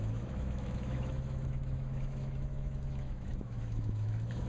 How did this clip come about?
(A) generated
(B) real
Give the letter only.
A